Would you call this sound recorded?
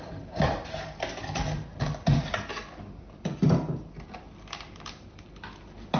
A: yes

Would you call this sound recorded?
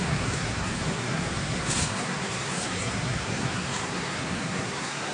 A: no